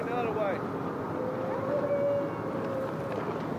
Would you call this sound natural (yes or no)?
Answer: yes